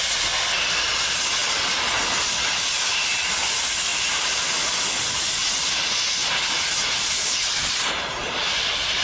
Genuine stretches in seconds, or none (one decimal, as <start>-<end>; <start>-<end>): 0.0-9.0